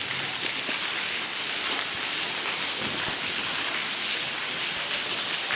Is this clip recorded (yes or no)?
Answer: yes